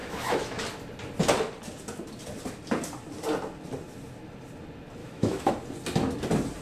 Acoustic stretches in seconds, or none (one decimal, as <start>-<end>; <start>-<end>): 0.6-5.0; 5.5-6.6